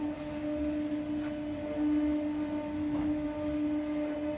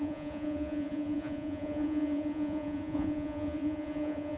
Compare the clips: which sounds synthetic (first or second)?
second